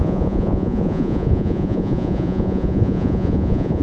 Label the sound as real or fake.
fake